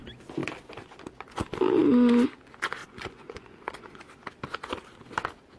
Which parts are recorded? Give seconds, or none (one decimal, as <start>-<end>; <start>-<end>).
0.0-2.8; 4.0-5.6